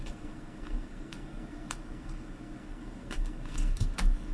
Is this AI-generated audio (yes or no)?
yes